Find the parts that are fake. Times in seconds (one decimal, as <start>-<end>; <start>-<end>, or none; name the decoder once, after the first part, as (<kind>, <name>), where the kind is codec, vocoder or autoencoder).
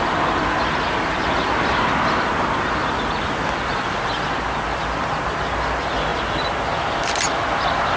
none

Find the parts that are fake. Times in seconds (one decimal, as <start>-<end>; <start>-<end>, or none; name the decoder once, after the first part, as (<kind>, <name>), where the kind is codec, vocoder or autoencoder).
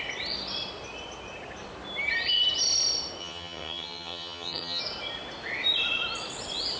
3.2-4.8 (vocoder, HiFi-GAN)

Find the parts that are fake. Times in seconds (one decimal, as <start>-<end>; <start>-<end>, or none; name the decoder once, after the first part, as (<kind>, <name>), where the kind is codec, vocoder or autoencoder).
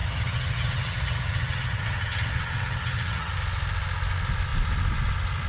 0.0-3.3 (vocoder, HiFi-GAN)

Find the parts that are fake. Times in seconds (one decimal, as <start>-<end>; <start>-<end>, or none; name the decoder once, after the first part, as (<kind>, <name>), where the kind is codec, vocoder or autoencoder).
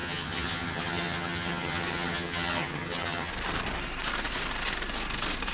0.0-3.3 (vocoder, HiFi-GAN)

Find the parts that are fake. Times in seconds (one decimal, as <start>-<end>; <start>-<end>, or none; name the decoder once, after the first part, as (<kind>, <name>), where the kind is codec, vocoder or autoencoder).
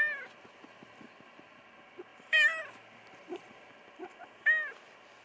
none